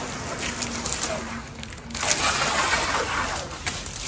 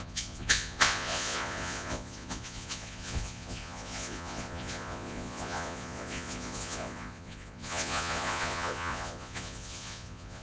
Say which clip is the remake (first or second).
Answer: second